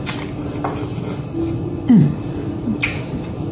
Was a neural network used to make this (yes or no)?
no